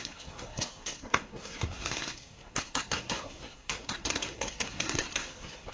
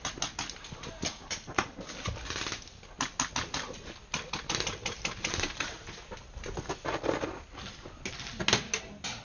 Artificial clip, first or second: first